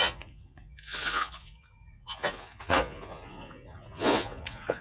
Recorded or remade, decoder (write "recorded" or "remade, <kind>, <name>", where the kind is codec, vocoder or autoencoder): remade, vocoder, Vocos